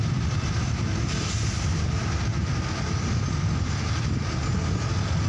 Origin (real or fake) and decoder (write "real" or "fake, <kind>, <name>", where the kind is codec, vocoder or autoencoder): real